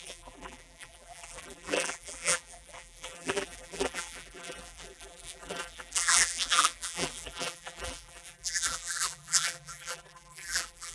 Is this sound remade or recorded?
remade